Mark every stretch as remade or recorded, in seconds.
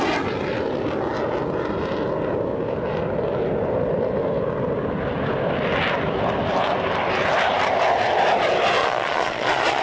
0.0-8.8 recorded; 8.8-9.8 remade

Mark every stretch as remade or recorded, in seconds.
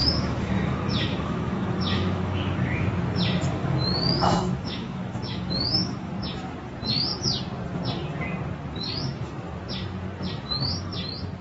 0.0-2.8 remade; 2.8-3.6 recorded; 3.6-6.1 remade; 6.1-11.4 recorded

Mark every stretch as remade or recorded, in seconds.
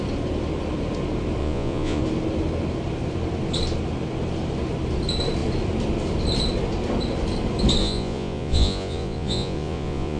0.0-1.4 recorded; 1.4-2.0 remade; 2.0-7.8 recorded; 7.8-10.2 remade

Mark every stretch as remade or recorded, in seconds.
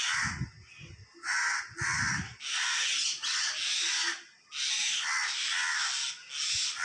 0.0-6.8 recorded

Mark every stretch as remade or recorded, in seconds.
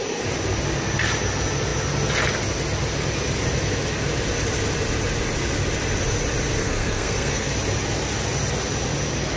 0.0-6.6 recorded; 6.6-7.5 remade; 7.5-9.4 recorded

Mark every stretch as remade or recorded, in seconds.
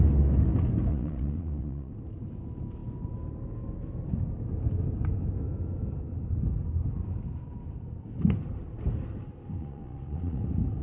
0.0-0.9 recorded; 0.9-1.9 remade; 1.9-9.6 recorded; 9.6-10.4 remade; 10.4-10.8 recorded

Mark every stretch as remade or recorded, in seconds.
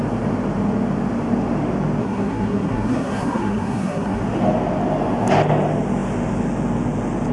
0.0-2.0 recorded; 2.0-4.2 remade; 4.2-7.3 recorded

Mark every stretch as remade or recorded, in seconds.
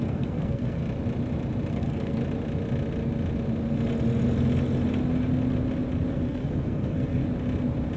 0.0-0.8 remade; 0.8-1.7 recorded; 1.7-2.2 remade; 2.2-6.1 recorded; 6.1-7.2 remade; 7.2-8.0 recorded